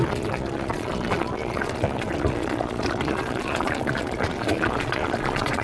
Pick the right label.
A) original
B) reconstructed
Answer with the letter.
B